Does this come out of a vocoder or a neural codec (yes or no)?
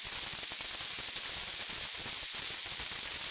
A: no